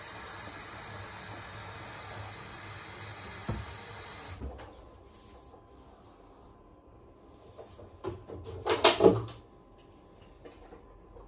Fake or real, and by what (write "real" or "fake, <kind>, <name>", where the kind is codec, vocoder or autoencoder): real